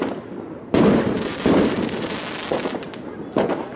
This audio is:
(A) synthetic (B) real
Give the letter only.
B